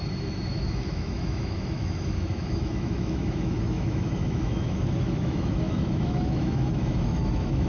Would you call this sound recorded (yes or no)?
no